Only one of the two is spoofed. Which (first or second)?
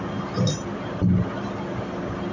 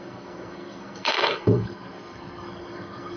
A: second